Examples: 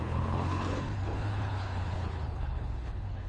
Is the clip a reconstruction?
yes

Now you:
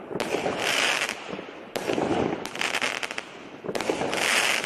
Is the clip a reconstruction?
no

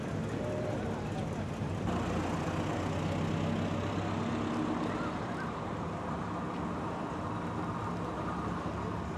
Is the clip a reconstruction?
no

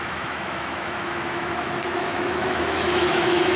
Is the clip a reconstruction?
yes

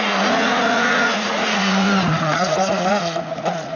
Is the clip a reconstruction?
yes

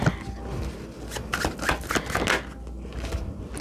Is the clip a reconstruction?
no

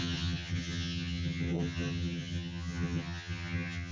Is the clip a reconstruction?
yes